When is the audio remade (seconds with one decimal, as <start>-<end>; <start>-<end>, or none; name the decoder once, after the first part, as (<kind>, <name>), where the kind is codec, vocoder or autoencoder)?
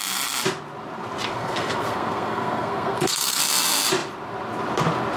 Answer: 1.3-3.4 (codec, SNAC)